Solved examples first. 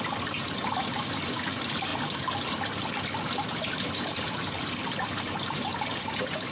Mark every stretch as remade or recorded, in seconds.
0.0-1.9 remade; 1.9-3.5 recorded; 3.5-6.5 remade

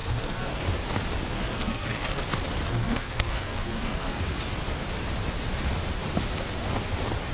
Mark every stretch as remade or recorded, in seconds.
0.0-0.6 remade; 0.6-1.3 recorded; 1.3-2.2 remade; 2.2-2.7 recorded; 2.7-4.2 remade; 4.2-7.3 recorded

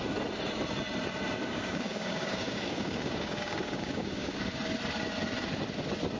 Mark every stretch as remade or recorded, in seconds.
0.0-1.4 recorded; 1.4-4.5 remade; 4.5-6.2 recorded

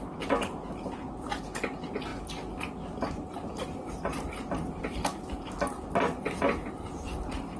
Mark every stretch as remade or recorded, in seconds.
0.0-7.6 recorded

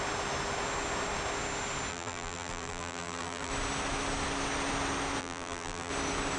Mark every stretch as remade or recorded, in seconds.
0.0-1.9 recorded; 1.9-3.5 remade; 3.5-5.2 recorded; 5.2-5.9 remade; 5.9-6.4 recorded